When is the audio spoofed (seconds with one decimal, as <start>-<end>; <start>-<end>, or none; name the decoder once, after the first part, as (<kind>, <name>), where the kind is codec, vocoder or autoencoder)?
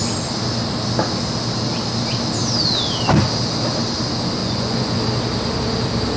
4.4-5.0 (vocoder, Vocos)